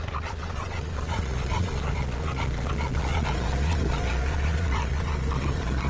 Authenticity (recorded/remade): remade